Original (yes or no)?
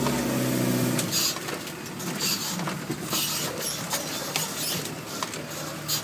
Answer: yes